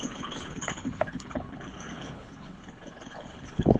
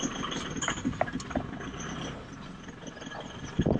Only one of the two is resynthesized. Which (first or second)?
first